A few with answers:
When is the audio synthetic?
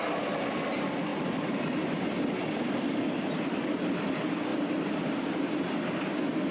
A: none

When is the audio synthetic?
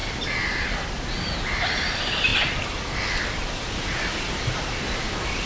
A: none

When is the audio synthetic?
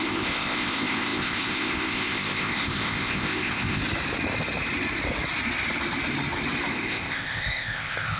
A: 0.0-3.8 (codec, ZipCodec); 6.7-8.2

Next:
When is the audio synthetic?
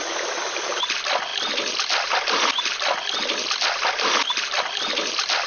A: none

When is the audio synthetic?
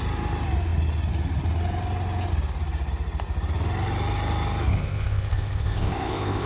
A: 4.7-6.5 (codec, ZipCodec)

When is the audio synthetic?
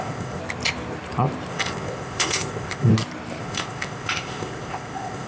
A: 0.0-0.4 (codec, ZipCodec); 1.5-2.9; 3.4-5.3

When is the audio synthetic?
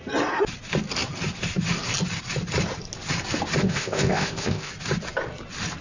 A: 3.6-4.7 (codec, ZipCodec)